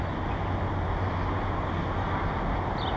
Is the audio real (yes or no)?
yes